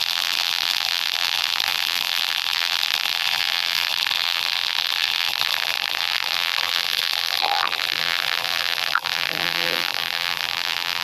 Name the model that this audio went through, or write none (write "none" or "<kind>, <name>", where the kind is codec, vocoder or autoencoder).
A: vocoder, BigVGAN v2